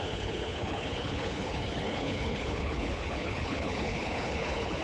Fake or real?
fake